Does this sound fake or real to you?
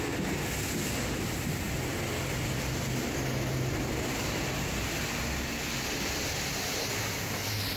real